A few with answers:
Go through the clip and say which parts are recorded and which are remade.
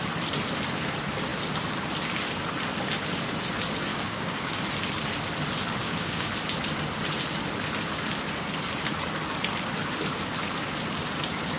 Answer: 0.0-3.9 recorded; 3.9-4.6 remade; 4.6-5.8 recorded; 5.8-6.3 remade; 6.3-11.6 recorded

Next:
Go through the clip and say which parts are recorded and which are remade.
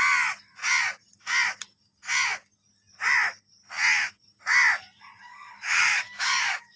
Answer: 0.0-5.2 recorded; 5.2-6.8 remade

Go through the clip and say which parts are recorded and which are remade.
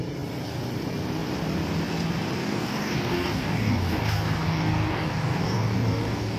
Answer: 0.0-2.4 recorded; 2.4-6.4 remade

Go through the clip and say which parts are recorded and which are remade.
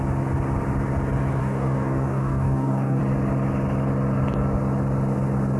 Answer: 0.0-1.4 recorded; 1.4-3.0 remade; 3.0-5.6 recorded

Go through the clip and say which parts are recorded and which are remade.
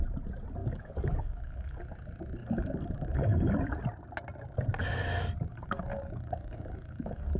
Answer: 0.0-0.6 recorded; 0.6-1.8 remade; 1.8-2.4 recorded; 2.4-3.5 remade; 3.5-5.5 recorded; 5.5-7.4 remade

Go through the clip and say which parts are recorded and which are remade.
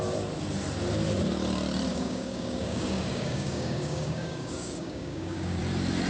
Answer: 0.0-1.9 recorded; 1.9-5.6 remade; 5.6-6.1 recorded